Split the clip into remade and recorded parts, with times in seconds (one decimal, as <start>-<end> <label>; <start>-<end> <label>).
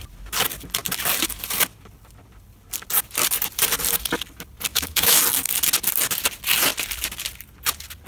0.0-4.7 recorded; 4.7-5.2 remade; 5.2-8.1 recorded